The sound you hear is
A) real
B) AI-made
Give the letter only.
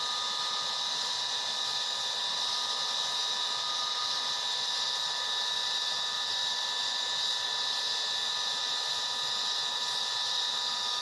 A